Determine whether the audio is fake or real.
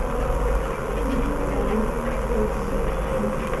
real